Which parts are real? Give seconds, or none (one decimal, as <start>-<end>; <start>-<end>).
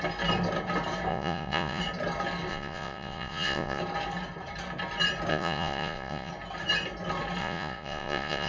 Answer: 0.0-1.1; 1.8-2.5; 3.8-5.3; 6.3-7.4